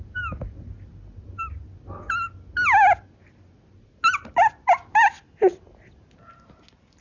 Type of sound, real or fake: real